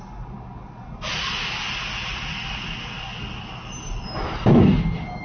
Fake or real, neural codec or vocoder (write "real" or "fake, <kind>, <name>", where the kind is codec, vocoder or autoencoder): real